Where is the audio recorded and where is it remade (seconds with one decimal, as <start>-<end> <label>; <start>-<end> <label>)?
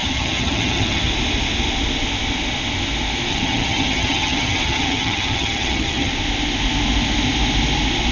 0.0-1.1 remade; 1.1-3.3 recorded; 3.3-6.1 remade; 6.1-8.1 recorded